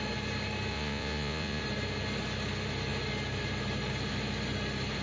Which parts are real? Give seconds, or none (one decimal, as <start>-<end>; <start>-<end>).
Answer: 0.0-0.7; 1.6-5.0